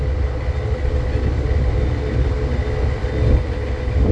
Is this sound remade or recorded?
recorded